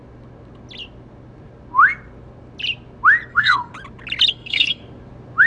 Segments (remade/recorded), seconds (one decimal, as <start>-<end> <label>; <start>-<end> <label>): 0.0-3.3 recorded; 3.3-3.7 remade; 3.7-4.3 recorded; 4.3-4.8 remade; 4.8-5.5 recorded